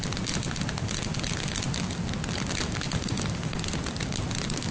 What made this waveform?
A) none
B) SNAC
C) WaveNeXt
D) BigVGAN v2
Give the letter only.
A